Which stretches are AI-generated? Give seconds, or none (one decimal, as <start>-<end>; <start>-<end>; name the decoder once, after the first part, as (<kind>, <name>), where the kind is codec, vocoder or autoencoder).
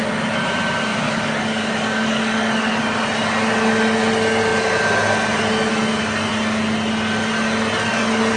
0.9-2.8 (codec, DAC)